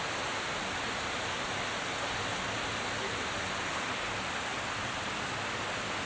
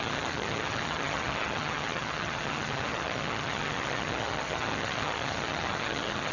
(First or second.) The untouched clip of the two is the first